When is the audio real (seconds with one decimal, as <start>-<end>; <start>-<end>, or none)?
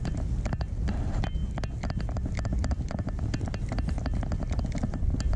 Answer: 0.0-5.4